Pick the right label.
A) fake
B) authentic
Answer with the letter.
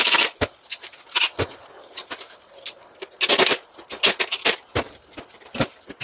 B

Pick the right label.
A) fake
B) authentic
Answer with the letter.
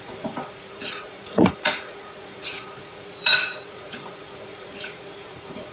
A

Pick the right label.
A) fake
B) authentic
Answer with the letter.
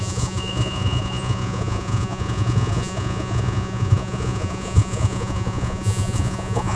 A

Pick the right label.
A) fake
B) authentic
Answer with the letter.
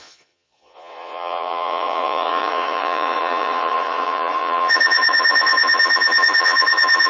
A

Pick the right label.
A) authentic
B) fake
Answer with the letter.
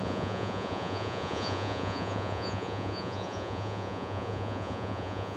B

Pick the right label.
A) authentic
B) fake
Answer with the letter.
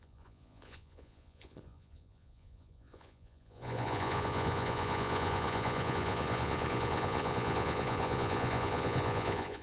B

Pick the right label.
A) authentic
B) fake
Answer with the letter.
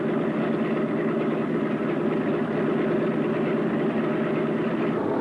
A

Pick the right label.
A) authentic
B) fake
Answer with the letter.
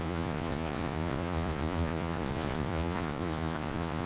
B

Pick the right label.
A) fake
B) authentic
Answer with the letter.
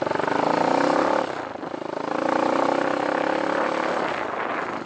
B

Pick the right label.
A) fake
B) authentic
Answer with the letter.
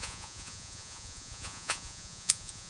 A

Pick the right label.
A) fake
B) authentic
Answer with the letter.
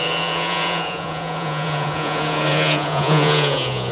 A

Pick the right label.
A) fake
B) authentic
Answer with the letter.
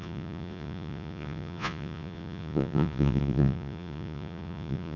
A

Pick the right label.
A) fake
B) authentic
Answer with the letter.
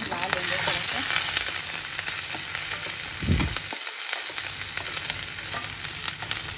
B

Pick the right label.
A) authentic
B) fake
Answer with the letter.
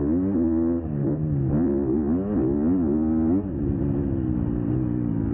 A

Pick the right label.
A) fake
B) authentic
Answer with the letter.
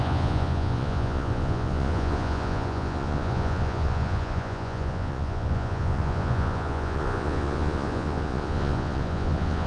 A